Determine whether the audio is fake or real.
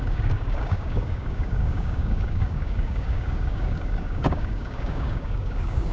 fake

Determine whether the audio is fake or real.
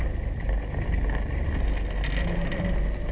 real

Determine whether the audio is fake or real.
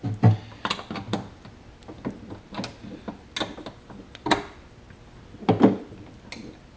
real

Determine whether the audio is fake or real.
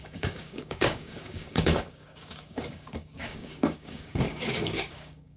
fake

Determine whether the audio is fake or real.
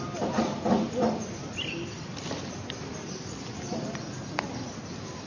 real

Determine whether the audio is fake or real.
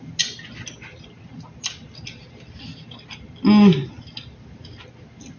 real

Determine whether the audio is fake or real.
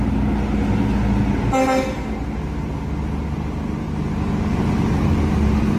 real